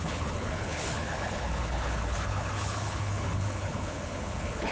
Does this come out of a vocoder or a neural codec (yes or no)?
yes